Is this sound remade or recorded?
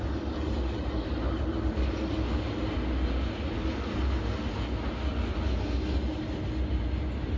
recorded